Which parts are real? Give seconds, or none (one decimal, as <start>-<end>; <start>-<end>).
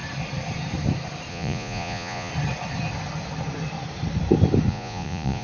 0.0-1.3; 2.3-4.7